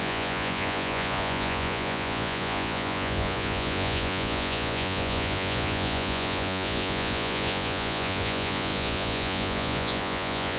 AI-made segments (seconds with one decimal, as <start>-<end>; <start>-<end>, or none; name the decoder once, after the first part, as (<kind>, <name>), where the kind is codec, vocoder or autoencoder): 0.0-10.6 (vocoder, Vocos)